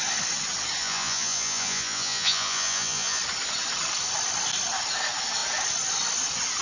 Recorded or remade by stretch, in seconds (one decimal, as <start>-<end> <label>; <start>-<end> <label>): 0.0-0.8 recorded; 0.8-3.2 remade; 3.2-6.6 recorded